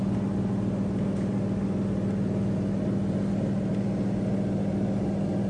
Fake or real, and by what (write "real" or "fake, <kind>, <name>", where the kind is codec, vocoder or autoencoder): real